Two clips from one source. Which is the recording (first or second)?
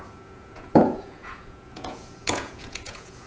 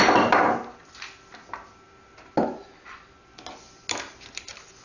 second